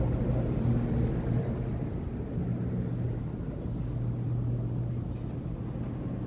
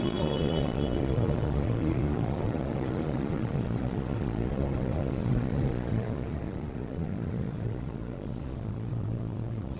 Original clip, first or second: first